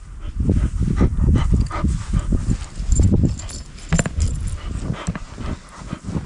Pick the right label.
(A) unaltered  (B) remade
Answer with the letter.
A